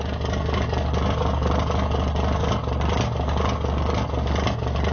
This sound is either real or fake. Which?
real